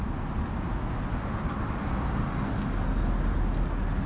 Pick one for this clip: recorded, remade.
recorded